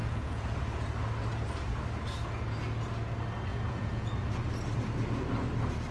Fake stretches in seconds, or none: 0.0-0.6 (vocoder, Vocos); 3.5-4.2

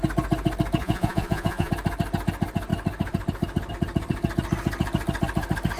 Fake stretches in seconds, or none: 0.8-1.7 (vocoder, Vocos)

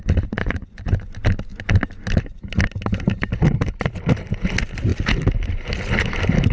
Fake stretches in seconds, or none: 0.4-1.1 (vocoder, Vocos)

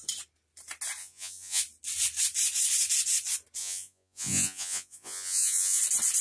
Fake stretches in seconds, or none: 1.0-1.6 (vocoder, Vocos); 3.6-5.8

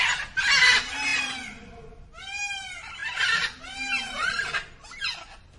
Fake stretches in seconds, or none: none

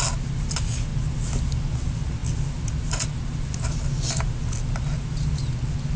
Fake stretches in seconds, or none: none

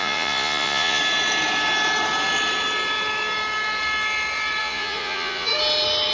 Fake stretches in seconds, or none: 0.0-1.0 (vocoder, Vocos); 4.6-5.5